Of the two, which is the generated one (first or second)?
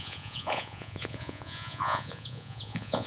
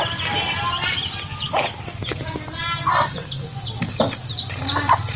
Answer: first